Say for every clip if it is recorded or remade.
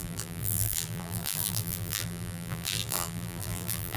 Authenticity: remade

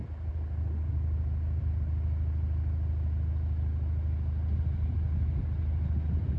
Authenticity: recorded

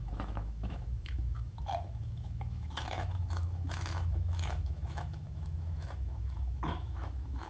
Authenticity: remade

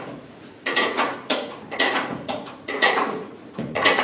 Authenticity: remade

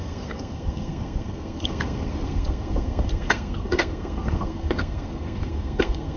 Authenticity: remade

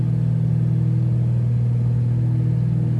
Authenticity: recorded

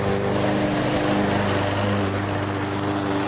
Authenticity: recorded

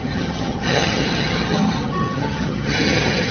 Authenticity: remade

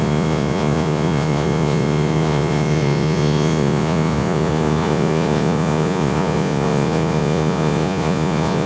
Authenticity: remade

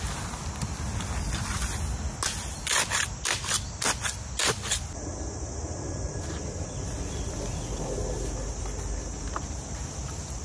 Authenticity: recorded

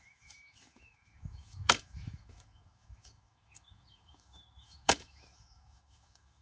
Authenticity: remade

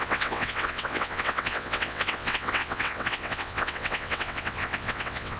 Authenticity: remade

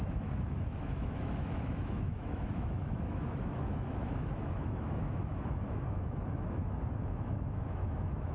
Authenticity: remade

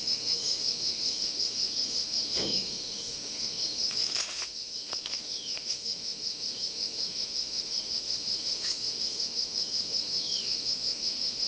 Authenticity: remade